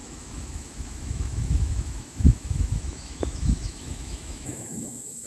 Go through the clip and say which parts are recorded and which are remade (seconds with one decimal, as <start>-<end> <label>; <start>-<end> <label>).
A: 0.0-5.3 remade